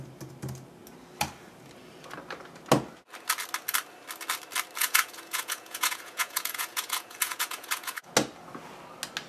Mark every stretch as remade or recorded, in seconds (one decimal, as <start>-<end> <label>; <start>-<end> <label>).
0.0-4.8 recorded; 4.8-8.1 remade; 8.1-9.3 recorded